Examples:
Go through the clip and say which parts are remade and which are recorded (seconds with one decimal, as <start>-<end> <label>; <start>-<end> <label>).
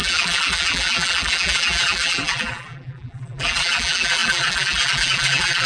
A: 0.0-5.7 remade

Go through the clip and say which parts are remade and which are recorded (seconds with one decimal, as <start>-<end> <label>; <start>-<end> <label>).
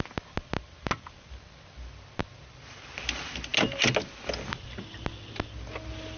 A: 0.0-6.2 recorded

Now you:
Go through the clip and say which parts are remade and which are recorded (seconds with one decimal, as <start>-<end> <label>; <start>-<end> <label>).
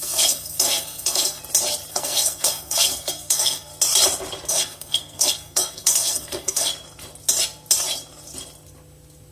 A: 0.0-1.4 remade; 1.4-1.9 recorded; 1.9-3.7 remade; 3.7-4.5 recorded; 4.5-6.7 remade; 6.7-9.3 recorded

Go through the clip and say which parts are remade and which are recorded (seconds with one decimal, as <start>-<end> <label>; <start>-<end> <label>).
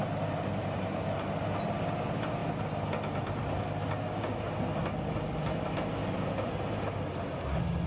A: 0.0-6.0 recorded; 6.0-6.8 remade; 6.8-7.9 recorded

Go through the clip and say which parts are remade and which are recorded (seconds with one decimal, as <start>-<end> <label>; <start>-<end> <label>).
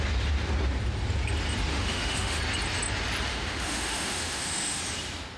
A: 0.0-1.7 recorded; 1.7-2.4 remade; 2.4-3.3 recorded; 3.3-4.8 remade; 4.8-5.4 recorded